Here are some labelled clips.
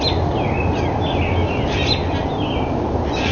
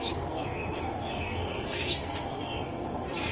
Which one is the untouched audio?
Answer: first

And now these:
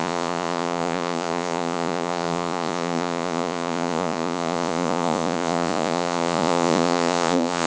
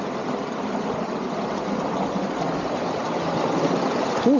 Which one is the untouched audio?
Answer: second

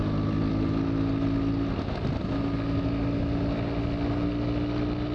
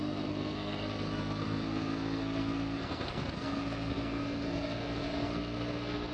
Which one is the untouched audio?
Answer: first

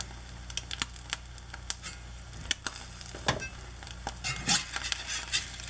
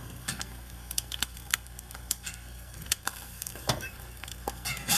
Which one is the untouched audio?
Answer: first